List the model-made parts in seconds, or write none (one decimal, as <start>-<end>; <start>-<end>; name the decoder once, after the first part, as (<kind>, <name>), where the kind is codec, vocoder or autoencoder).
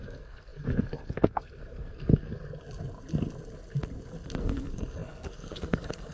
0.0-2.3 (codec, SNAC); 4.4-6.1